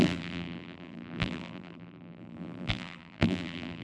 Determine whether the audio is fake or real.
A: fake